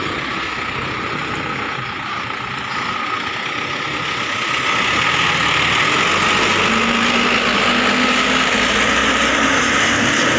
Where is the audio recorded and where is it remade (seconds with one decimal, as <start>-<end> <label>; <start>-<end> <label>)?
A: 0.0-9.0 recorded; 9.0-9.6 remade; 9.6-10.4 recorded